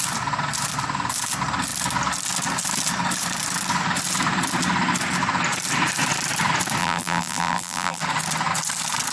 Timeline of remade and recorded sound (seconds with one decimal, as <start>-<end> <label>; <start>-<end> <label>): 0.0-6.8 recorded; 6.8-8.0 remade; 8.0-9.1 recorded